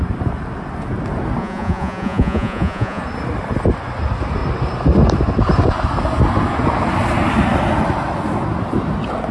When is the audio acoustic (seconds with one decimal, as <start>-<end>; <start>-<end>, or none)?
0.0-1.4; 3.0-9.3